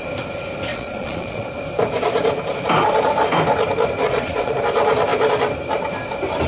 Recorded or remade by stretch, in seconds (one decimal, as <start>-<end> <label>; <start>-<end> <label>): 0.0-0.7 recorded; 0.7-1.5 remade; 1.5-4.0 recorded; 4.0-4.6 remade; 4.6-6.5 recorded

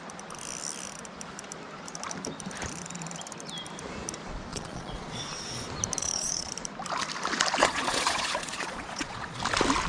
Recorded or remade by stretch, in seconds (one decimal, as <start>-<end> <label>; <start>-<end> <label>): 0.0-4.5 recorded; 4.5-5.2 remade; 5.2-6.0 recorded; 6.0-6.5 remade; 6.5-7.6 recorded; 7.6-9.4 remade; 9.4-9.9 recorded